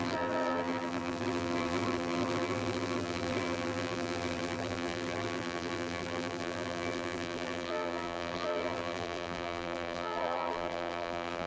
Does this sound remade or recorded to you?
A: remade